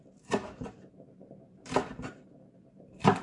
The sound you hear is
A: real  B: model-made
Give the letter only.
B